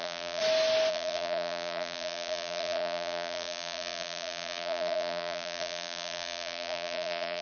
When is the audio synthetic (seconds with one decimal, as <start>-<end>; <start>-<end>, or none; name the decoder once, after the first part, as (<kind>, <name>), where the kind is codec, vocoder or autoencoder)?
0.0-0.4 (vocoder, BigVGAN v2); 0.9-7.4